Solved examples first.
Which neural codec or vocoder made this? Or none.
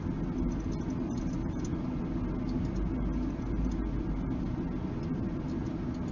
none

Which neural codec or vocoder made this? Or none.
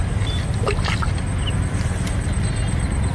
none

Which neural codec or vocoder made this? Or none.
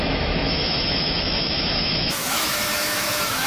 autoencoder, DAC-VAE